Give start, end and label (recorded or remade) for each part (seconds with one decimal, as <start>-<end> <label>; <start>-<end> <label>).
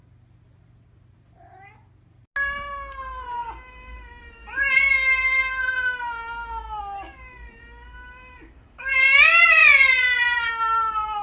0.0-9.6 recorded; 9.6-10.5 remade; 10.5-11.2 recorded